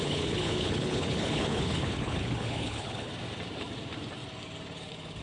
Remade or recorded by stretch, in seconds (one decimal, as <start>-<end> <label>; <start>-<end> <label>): 0.0-3.1 remade; 3.1-5.2 recorded